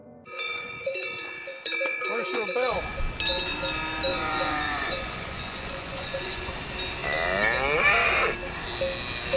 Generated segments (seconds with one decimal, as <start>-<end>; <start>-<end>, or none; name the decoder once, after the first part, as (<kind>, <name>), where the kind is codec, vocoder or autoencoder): 0.0-3.0 (vocoder, Vocos); 4.1-6.5